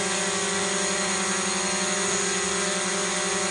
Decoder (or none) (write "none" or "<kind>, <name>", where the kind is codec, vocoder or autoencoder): none